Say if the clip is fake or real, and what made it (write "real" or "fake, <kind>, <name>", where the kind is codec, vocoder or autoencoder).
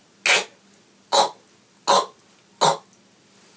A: real